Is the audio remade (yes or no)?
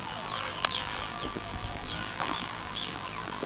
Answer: yes